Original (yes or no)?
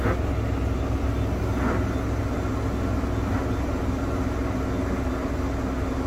yes